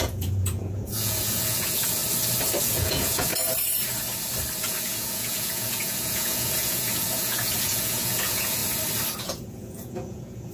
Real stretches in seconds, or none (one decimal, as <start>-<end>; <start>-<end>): 2.0-2.6; 3.3-4.6; 8.6-9.2